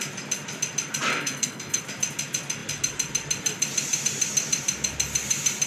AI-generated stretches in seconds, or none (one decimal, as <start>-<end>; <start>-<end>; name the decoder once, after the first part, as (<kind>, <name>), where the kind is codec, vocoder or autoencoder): 1.1-1.8 (codec, SNAC)